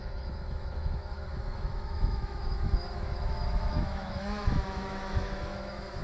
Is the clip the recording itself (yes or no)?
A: no